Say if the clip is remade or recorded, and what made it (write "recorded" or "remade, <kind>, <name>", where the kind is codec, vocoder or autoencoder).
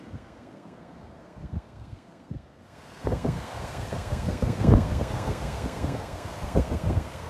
remade, codec, SNAC